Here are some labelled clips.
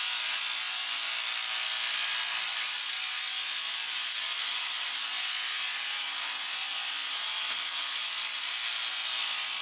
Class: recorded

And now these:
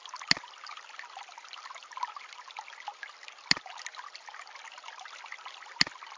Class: recorded